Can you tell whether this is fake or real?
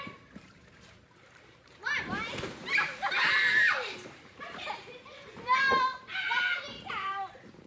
fake